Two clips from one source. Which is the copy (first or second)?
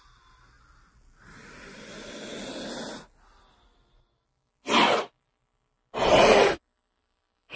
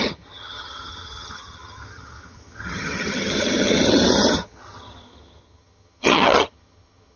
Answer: second